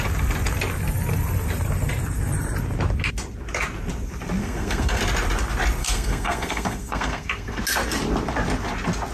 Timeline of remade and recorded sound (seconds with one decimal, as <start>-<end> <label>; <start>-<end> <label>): 0.0-4.4 recorded; 4.4-5.0 remade; 5.0-5.8 recorded; 5.8-7.6 remade; 7.6-9.1 recorded